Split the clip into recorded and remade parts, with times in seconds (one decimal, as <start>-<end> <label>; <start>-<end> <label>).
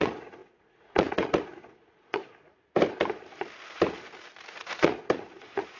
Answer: 0.0-2.2 remade; 2.2-4.5 recorded; 4.5-5.8 remade